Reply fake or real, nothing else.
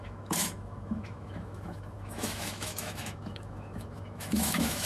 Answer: fake